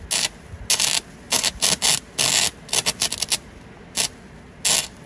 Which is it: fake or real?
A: real